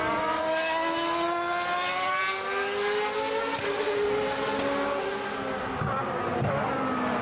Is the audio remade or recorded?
recorded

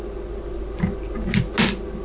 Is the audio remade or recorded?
recorded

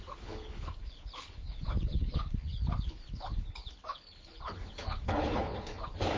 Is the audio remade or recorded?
remade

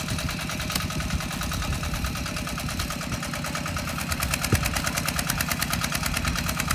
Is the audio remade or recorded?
recorded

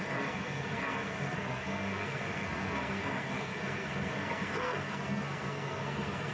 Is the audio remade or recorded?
remade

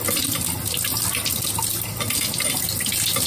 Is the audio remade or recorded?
recorded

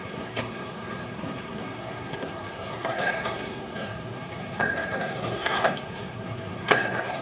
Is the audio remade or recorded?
remade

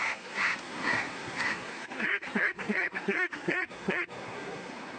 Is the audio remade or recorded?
remade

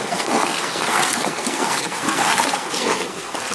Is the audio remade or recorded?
remade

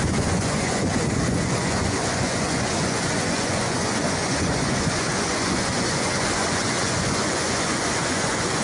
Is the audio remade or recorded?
remade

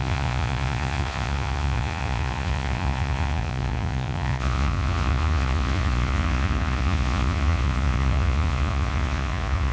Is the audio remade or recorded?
remade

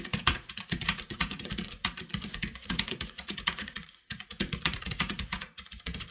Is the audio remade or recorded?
remade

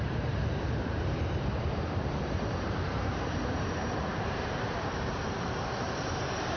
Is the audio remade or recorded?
remade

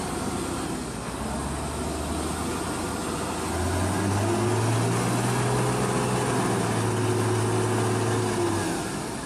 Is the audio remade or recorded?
recorded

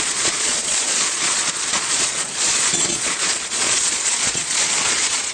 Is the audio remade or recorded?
remade